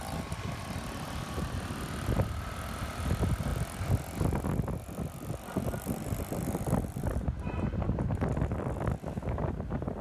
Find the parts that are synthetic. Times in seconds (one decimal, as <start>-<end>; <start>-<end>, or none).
0.0-3.5; 5.7-10.0